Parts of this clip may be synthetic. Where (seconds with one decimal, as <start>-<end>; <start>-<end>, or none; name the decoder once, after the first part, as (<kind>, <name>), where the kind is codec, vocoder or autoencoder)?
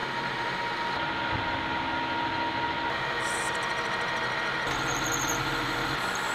0.0-0.6 (vocoder, BigVGAN v2)